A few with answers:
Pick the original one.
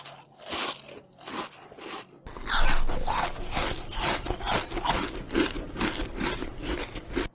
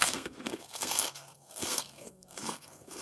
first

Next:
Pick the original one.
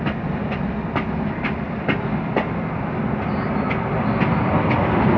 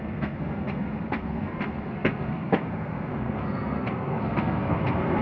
first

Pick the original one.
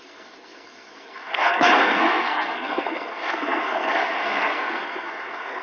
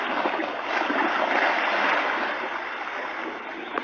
second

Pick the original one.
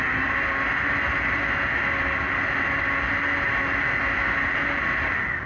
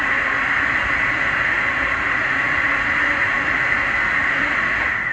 first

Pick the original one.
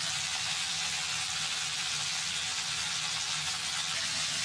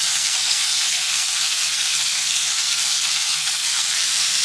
first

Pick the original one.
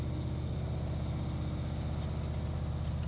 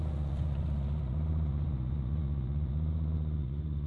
first